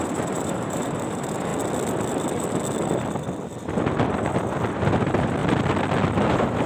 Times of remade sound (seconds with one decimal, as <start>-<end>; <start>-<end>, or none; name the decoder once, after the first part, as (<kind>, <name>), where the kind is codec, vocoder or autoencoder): 0.0-1.5 (vocoder, BigVGAN v2); 5.0-5.4; 6.0-6.7